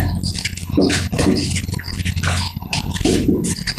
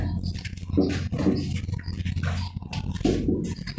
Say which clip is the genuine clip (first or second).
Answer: second